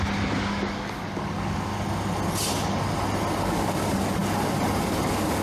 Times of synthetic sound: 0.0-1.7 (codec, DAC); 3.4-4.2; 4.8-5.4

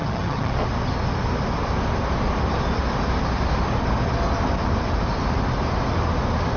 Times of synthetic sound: 0.0-0.5 (vocoder, HiFi-GAN)

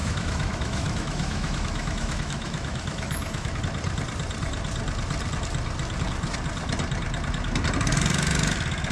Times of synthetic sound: 0.0-3.6 (autoencoder, DAC-VAE)

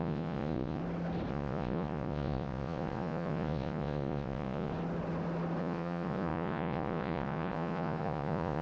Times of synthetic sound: 0.0-0.8 (vocoder, Vocos); 1.3-4.7; 5.6-8.6